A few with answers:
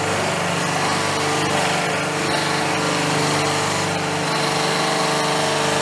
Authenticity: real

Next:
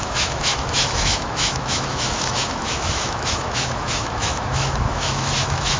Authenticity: fake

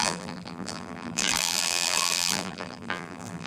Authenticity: fake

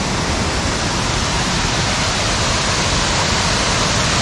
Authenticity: real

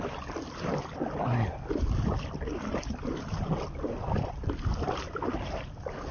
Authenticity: real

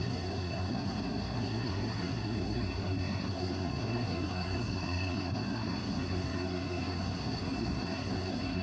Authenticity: fake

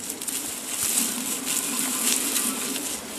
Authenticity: real